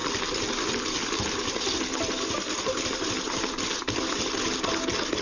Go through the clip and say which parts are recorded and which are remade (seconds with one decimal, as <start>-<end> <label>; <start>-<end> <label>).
0.0-3.1 remade; 3.1-5.2 recorded

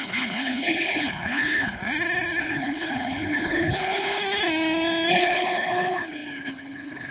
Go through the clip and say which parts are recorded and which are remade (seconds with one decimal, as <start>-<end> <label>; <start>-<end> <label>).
0.0-1.8 remade; 1.8-2.4 recorded; 2.4-4.2 remade; 4.2-5.1 recorded; 5.1-7.1 remade

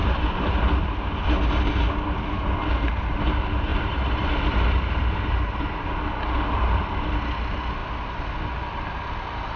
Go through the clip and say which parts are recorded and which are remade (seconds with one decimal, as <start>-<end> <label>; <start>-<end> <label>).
0.0-0.8 remade; 0.8-3.7 recorded; 3.7-5.9 remade; 5.9-7.8 recorded; 7.8-8.4 remade; 8.4-9.6 recorded

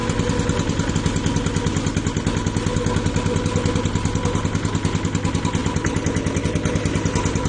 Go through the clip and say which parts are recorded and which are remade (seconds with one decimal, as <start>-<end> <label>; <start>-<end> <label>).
0.0-7.5 recorded